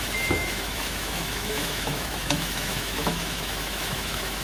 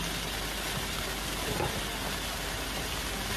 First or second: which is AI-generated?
first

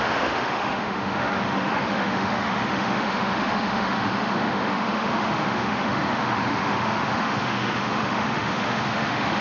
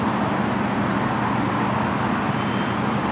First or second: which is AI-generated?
first